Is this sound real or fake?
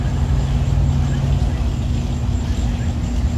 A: real